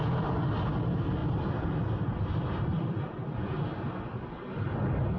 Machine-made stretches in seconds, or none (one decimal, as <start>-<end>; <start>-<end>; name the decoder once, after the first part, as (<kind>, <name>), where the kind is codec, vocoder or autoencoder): none